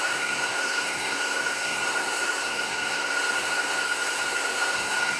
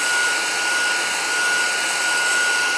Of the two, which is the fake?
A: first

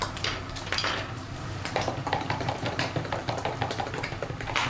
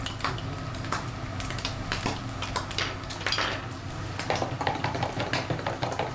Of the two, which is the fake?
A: first